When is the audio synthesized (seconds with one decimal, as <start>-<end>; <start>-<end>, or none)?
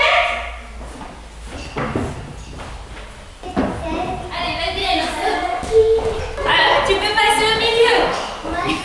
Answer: 4.8-6.2; 7.8-8.8